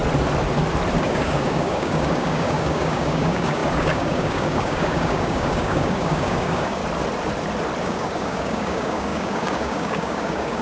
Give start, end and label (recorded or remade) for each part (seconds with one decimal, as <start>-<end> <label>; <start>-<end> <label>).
0.0-1.0 recorded; 1.0-6.8 remade; 6.8-7.8 recorded; 7.8-10.6 remade